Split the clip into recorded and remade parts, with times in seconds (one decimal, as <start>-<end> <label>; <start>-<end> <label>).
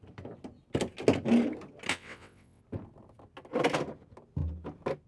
0.0-1.9 recorded; 1.9-2.6 remade; 2.6-5.1 recorded